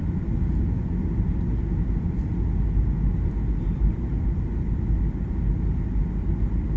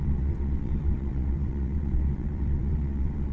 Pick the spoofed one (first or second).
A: second